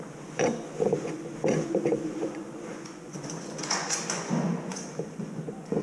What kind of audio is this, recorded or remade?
remade